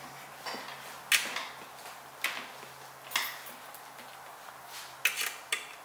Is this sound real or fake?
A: real